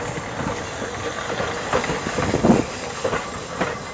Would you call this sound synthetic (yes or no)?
no